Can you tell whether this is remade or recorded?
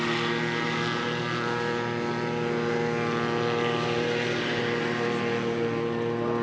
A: recorded